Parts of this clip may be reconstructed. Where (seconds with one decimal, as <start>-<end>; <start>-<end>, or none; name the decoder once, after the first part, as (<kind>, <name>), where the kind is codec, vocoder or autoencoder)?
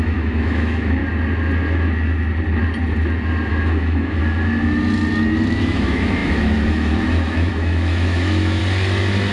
0.0-1.0 (autoencoder, DAC-VAE); 3.5-4.2; 5.5-8.6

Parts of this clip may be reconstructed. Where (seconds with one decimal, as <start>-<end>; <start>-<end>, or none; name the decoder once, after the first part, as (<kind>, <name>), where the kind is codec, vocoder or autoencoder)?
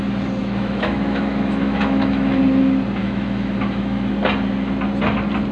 0.4-2.4 (autoencoder, DAC-VAE); 3.0-4.1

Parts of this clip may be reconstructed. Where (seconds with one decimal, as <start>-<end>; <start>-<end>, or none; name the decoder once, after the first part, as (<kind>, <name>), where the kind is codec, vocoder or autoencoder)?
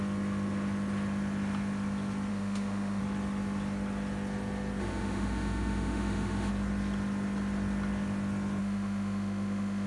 2.3-3.0 (autoencoder, DAC-VAE); 4.8-6.5; 8.6-9.9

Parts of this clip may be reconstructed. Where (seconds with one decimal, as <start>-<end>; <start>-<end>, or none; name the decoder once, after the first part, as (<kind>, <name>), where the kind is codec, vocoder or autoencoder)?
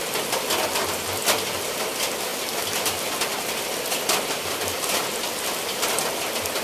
none